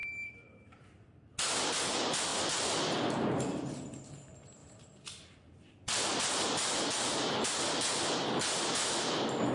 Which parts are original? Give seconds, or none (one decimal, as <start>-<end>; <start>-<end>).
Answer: 1.8-2.3; 4.0-4.6; 6.0-9.5